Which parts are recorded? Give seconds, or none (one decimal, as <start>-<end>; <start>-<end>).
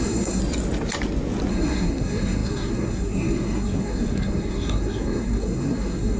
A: 0.4-1.5